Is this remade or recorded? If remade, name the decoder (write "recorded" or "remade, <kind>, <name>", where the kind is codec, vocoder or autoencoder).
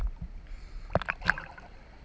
recorded